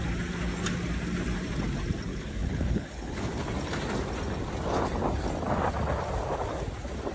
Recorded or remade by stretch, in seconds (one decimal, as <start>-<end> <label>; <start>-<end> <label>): 0.0-2.1 recorded; 2.1-3.5 remade; 3.5-7.1 recorded